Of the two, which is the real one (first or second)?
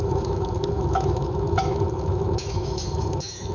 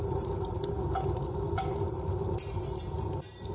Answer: second